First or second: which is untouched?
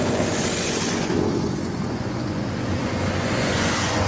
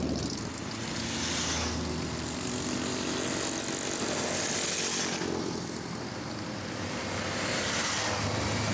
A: second